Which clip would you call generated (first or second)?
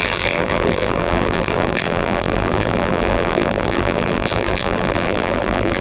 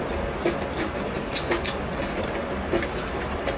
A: first